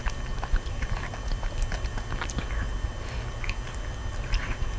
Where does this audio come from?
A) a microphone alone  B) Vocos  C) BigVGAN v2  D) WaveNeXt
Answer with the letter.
A